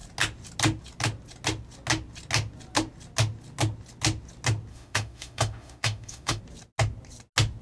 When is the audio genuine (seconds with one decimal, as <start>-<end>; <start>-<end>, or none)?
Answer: 0.0-4.7; 6.4-7.6